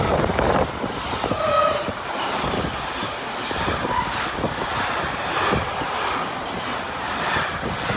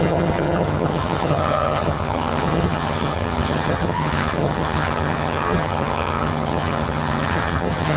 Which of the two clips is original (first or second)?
first